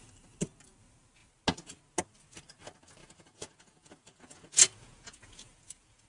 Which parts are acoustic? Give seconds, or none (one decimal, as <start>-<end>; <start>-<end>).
0.0-3.0